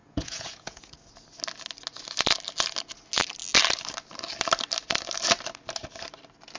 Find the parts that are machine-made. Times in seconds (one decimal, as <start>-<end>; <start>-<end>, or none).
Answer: 0.0-0.8